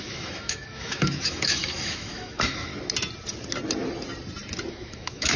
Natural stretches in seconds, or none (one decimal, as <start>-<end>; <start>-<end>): 2.7-4.7

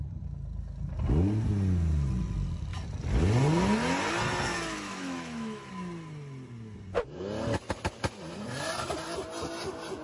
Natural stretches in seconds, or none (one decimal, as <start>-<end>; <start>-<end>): 0.0-4.5; 5.7-10.0

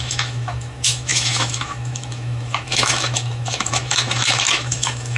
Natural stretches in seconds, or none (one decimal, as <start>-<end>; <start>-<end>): none

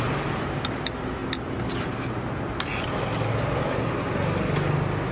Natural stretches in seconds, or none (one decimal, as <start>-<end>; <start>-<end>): 0.0-5.1

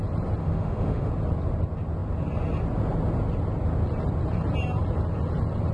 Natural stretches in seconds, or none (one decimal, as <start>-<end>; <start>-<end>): 0.0-0.4; 1.1-5.7

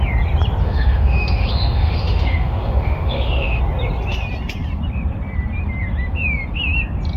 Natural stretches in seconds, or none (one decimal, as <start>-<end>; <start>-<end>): 0.0-0.6; 3.6-7.2

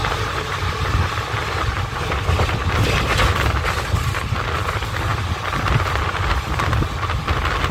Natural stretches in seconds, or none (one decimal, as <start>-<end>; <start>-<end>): 0.0-7.7